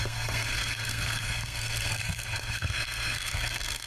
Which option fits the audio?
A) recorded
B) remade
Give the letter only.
B